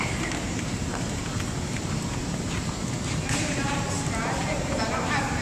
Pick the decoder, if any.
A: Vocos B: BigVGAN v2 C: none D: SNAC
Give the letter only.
B